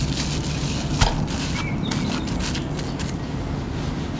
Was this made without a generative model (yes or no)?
yes